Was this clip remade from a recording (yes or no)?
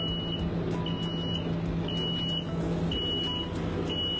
no